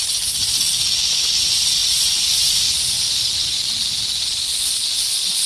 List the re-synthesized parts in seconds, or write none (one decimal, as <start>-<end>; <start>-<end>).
1.8-3.6